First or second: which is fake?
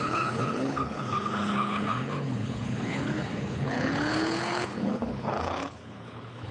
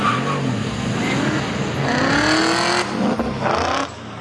first